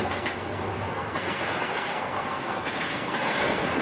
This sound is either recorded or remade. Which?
remade